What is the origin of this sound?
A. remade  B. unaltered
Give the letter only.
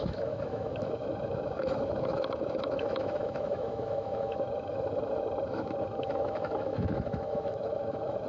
A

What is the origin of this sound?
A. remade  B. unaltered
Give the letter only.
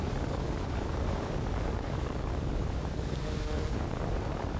A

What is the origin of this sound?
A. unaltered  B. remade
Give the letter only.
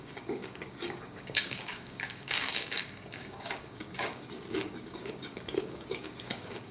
B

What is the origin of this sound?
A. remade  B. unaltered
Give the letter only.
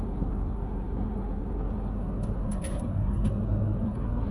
A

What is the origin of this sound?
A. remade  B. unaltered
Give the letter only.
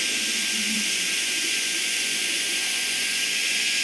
A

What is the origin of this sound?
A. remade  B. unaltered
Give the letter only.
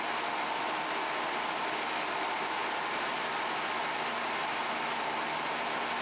B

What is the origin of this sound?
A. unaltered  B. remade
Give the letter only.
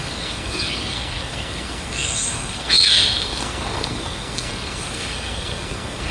B